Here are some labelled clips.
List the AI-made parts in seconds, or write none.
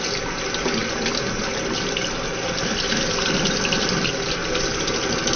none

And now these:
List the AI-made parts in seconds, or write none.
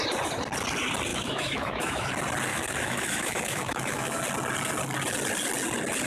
1.1-2.1; 2.5-4.2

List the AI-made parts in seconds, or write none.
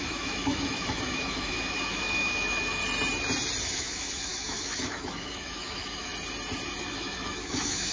0.0-2.8; 3.6-6.1; 6.8-7.9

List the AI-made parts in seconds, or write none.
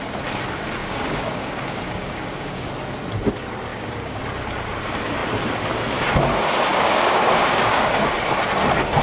0.8-2.7; 3.7-4.2; 6.7-8.1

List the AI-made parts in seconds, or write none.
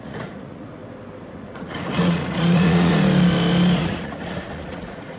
0.0-0.8; 1.3-2.9; 3.8-5.2